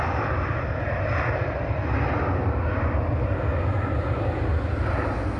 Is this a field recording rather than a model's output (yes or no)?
yes